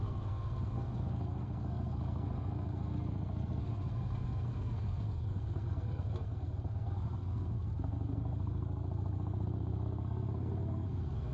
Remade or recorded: remade